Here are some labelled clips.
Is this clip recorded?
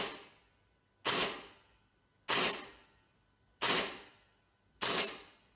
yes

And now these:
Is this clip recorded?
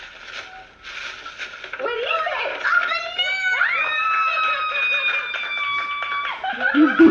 yes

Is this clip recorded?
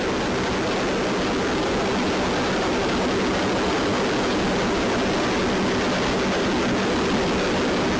yes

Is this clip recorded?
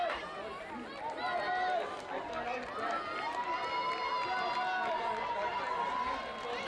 yes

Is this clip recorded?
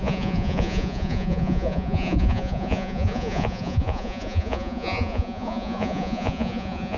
no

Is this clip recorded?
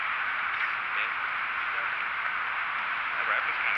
yes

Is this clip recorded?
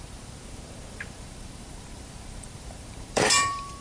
no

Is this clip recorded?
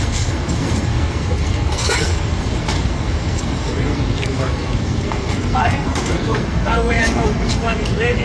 no